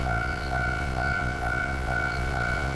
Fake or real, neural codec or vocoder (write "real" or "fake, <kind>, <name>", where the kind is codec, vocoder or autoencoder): fake, vocoder, Vocos